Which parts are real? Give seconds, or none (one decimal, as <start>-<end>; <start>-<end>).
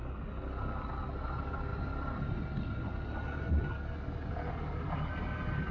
0.0-5.7